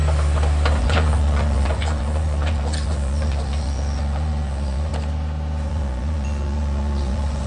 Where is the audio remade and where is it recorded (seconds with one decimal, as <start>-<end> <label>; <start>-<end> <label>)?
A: 0.0-0.8 recorded; 0.8-4.9 remade; 4.9-5.7 recorded; 5.7-7.5 remade